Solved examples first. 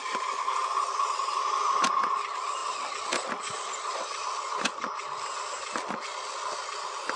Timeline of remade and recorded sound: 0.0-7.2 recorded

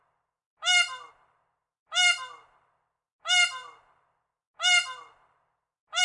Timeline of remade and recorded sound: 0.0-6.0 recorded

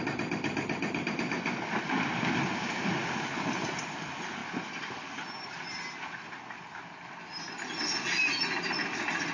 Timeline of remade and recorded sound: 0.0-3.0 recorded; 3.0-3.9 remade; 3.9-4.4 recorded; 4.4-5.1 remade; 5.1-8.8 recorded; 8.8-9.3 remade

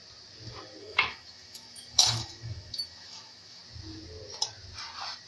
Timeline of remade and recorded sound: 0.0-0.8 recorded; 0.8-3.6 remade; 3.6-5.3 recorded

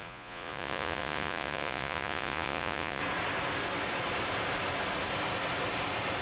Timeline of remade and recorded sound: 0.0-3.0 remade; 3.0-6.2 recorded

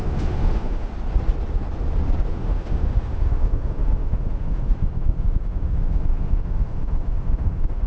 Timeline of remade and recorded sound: 0.0-0.9 remade; 0.9-2.3 recorded; 2.3-7.9 remade